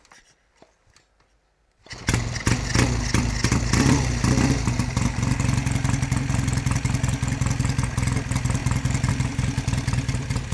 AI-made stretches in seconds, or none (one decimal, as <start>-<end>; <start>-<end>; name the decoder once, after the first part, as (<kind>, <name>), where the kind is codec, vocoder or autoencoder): none